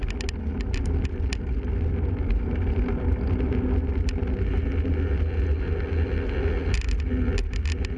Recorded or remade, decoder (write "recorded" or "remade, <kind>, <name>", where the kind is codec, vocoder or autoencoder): recorded